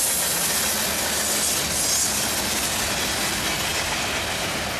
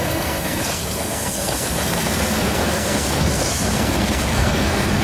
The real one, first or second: first